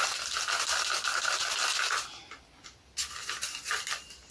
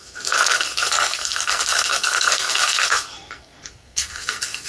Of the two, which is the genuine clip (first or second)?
first